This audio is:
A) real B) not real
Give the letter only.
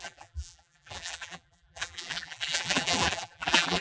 B